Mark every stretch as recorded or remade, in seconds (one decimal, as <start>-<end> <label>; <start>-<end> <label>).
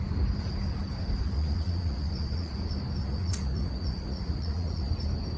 0.0-1.2 recorded; 1.2-2.5 remade; 2.5-3.0 recorded; 3.0-4.9 remade; 4.9-5.4 recorded